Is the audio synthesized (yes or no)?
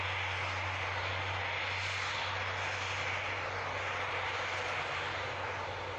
no